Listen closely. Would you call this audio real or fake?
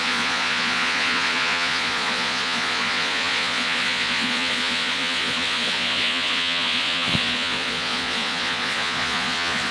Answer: fake